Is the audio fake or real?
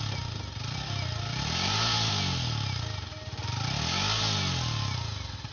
real